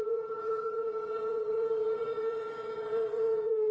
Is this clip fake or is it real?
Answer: fake